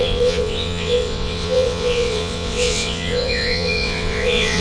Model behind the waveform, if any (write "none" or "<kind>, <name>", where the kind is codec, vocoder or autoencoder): vocoder, WaveNeXt